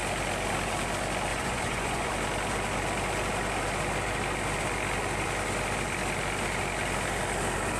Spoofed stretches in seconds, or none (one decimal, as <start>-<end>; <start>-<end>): 1.3-2.1